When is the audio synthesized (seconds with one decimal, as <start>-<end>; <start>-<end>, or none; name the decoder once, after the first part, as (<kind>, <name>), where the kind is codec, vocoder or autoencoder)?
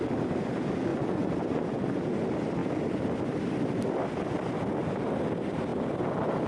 0.9-2.0 (vocoder, Vocos)